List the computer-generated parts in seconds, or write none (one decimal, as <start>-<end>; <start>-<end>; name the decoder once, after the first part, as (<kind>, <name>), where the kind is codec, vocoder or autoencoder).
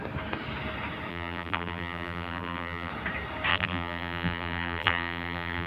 1.1-2.9 (vocoder, BigVGAN v2); 3.5-5.7